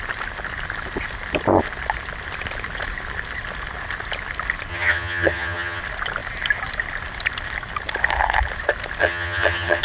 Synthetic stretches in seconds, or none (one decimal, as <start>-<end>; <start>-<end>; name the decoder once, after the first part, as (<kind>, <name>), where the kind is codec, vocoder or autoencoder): 4.7-5.8 (vocoder, HiFi-GAN); 9.0-9.8